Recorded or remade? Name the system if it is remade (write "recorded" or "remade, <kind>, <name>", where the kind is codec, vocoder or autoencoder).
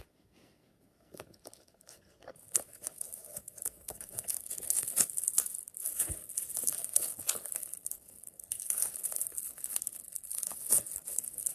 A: remade, codec, SNAC